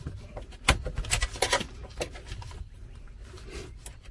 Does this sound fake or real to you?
real